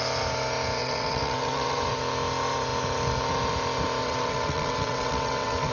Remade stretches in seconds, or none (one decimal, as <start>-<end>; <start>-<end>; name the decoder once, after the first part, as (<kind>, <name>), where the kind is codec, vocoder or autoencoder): 0.8-1.9 (vocoder, WaveNeXt); 4.0-5.7